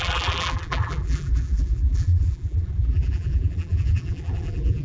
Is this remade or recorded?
remade